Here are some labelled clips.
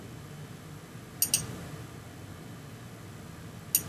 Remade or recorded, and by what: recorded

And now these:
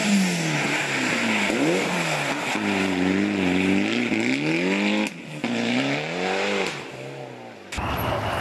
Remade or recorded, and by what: recorded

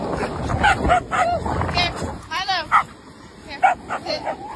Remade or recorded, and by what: recorded